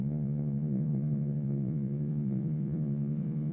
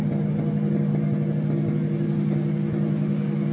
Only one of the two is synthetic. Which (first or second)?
first